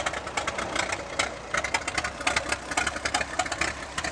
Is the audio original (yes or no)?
yes